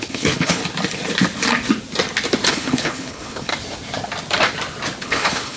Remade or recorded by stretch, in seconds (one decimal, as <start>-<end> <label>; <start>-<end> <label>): 0.0-0.6 remade; 0.6-2.5 recorded; 2.5-3.5 remade; 3.5-5.0 recorded; 5.0-5.6 remade